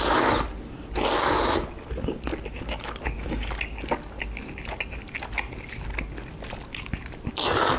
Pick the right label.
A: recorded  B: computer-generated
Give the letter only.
A